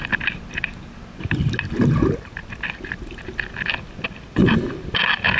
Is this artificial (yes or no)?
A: no